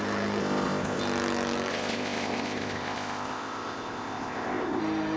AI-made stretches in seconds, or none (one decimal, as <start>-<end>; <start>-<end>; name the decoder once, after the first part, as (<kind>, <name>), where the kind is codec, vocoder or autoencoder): 0.4-1.0 (codec, ZipCodec); 1.7-4.8